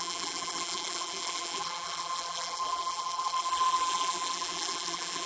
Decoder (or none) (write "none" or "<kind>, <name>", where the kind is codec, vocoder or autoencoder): vocoder, BigVGAN v2